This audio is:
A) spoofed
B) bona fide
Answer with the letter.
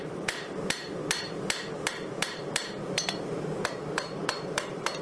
A